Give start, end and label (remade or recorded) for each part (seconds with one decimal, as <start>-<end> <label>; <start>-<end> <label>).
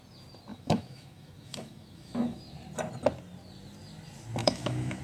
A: 0.0-0.5 recorded; 0.5-2.4 remade; 2.4-4.4 recorded; 4.4-5.0 remade